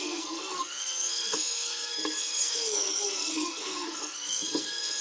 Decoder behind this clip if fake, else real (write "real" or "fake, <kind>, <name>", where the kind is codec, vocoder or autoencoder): fake, codec, SNAC